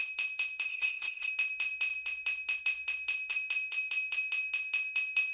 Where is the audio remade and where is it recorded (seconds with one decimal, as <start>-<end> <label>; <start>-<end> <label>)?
0.0-0.7 recorded; 0.7-1.3 remade; 1.3-5.3 recorded